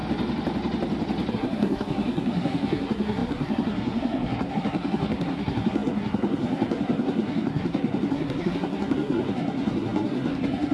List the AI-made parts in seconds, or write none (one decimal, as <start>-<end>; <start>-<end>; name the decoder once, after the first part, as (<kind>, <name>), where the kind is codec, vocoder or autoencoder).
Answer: 1.3-10.7 (codec, SNAC)